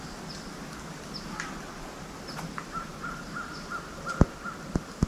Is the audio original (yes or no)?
yes